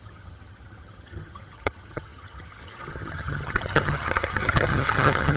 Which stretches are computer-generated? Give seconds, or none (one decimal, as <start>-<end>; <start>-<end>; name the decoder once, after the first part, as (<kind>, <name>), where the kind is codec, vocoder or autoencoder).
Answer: 0.0-5.4 (vocoder, HiFi-GAN)